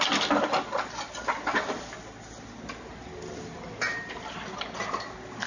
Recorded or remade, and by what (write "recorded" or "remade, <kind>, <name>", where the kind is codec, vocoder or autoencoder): recorded